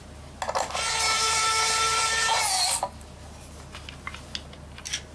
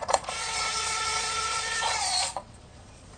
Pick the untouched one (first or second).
first